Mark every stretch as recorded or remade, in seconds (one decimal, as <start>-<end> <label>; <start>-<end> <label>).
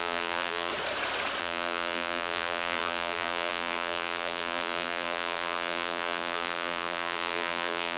0.0-0.7 remade; 0.7-1.4 recorded; 1.4-8.0 remade